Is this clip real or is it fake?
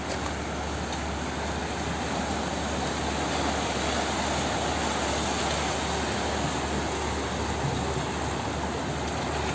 real